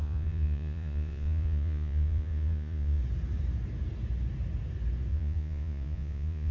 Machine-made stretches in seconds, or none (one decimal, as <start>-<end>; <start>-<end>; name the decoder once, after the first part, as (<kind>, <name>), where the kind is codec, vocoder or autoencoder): 0.0-3.0 (vocoder, Vocos); 5.1-6.5